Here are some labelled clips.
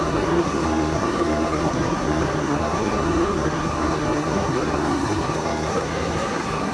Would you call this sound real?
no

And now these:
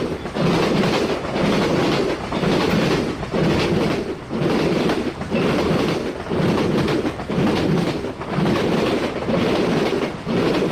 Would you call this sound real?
yes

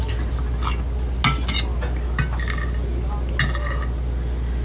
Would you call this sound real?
yes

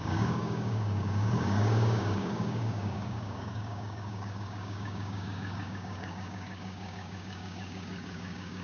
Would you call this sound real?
no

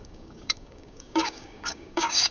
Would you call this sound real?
no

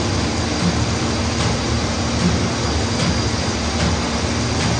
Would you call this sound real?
yes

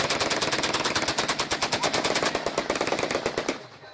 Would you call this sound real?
yes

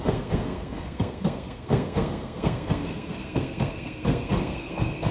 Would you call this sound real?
no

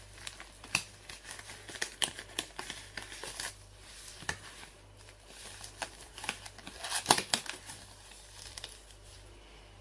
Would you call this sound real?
yes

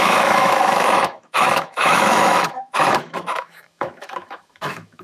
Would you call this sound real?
no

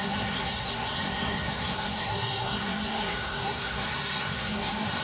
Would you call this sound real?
no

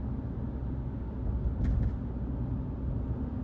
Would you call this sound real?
yes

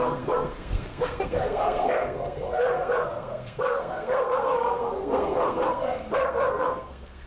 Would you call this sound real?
no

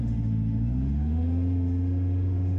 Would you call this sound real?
no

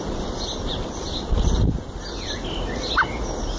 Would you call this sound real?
yes